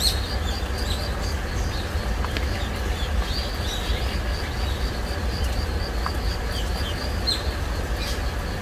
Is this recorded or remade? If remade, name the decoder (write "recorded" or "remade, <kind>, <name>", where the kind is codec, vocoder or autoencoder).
recorded